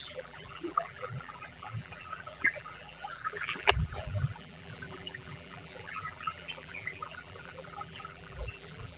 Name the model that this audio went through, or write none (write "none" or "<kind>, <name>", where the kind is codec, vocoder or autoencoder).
vocoder, BigVGAN v2